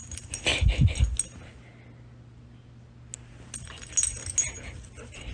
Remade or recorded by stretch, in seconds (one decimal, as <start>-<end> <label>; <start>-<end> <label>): 0.0-5.3 recorded